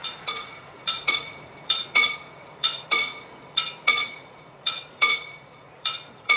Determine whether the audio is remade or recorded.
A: remade